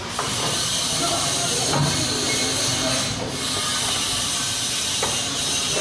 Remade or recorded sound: recorded